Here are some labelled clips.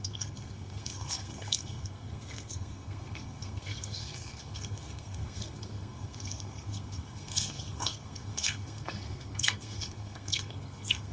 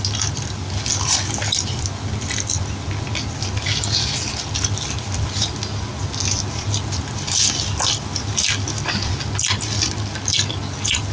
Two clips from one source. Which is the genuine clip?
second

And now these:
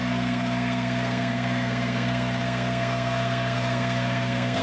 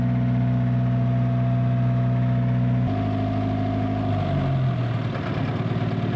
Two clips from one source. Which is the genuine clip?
second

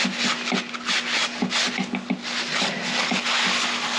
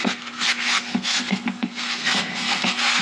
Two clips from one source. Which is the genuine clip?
first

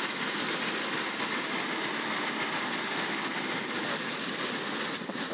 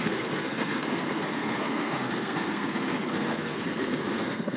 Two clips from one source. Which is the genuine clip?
first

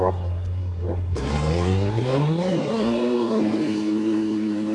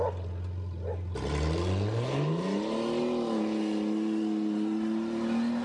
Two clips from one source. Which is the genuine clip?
second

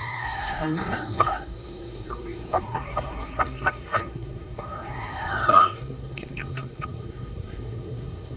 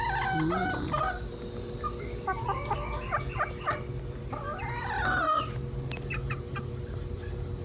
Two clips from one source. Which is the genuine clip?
second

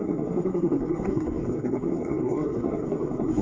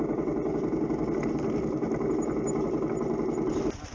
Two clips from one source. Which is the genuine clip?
second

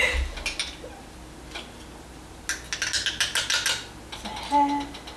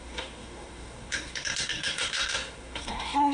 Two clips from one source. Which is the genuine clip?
first